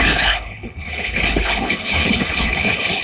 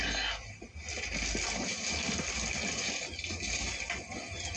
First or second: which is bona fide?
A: second